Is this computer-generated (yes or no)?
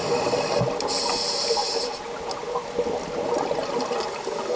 no